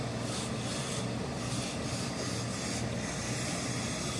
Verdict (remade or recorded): recorded